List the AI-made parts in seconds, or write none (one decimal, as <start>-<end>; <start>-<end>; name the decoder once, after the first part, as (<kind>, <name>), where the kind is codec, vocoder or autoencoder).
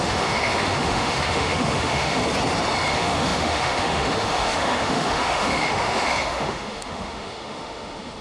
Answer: 0.0-2.2 (autoencoder, DAC-VAE); 2.9-8.2